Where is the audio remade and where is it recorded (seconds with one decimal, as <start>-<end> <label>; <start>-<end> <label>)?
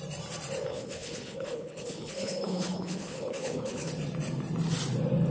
0.0-0.7 recorded; 0.7-3.9 remade; 3.9-5.3 recorded